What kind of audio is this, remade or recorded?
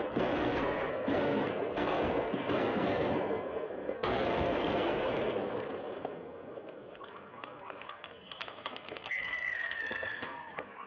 remade